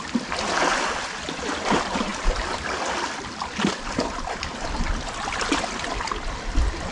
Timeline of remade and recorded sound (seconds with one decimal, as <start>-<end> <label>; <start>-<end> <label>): 0.0-6.9 recorded